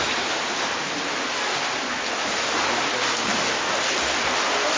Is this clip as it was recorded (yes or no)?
yes